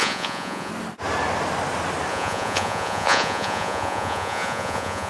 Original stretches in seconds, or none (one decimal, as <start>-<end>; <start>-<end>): 0.7-2.1